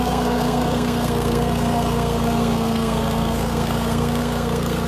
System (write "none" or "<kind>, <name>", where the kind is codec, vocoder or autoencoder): codec, SNAC